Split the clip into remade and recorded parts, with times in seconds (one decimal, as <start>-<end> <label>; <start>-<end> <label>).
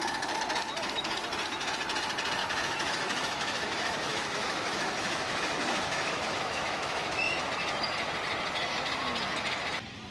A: 0.0-2.4 recorded; 2.4-7.4 remade; 7.4-10.1 recorded